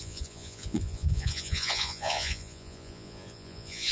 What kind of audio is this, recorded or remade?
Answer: remade